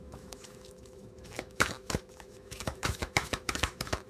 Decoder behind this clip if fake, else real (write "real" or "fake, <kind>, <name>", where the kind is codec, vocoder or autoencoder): fake, autoencoder, DAC-VAE